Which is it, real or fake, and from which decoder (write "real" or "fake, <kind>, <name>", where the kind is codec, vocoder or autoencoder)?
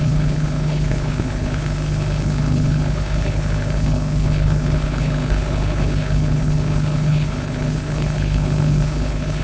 fake, codec, HILCodec